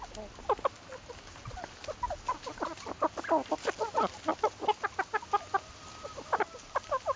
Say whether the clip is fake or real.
real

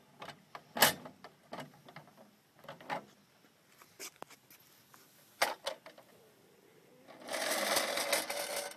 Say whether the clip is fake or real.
real